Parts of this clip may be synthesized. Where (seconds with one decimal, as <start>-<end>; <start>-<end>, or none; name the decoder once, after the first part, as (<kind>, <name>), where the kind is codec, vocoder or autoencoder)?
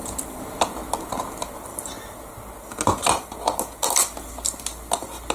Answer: none